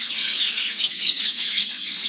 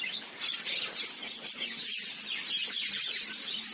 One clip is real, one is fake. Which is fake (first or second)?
first